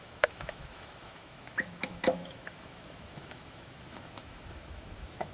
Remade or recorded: remade